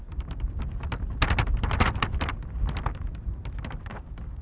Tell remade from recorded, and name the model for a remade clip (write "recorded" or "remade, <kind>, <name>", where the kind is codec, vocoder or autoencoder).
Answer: recorded